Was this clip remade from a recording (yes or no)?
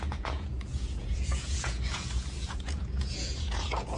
yes